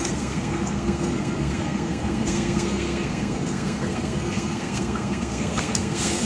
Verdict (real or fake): fake